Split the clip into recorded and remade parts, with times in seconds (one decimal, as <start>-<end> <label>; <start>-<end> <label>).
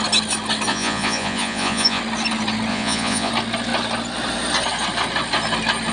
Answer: 0.0-0.7 recorded; 0.7-2.0 remade; 2.0-2.7 recorded; 2.7-3.3 remade; 3.3-5.9 recorded